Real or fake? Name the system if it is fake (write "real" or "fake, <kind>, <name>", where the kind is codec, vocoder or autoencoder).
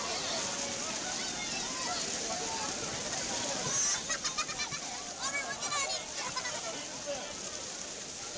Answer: real